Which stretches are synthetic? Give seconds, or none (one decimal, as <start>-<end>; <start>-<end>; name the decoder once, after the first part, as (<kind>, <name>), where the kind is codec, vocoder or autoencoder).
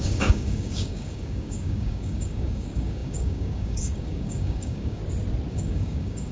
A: 0.0-5.0 (codec, DAC); 5.5-6.3